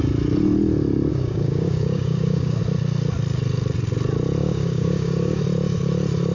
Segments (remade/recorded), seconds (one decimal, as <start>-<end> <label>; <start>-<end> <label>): 0.0-1.1 recorded; 1.1-2.6 remade; 2.6-4.4 recorded; 4.4-5.4 remade; 5.4-6.3 recorded